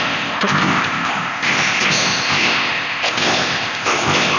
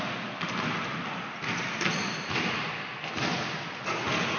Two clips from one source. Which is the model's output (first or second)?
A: first